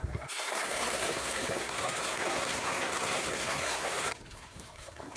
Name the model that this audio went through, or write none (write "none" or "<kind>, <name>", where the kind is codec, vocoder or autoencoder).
codec, SNAC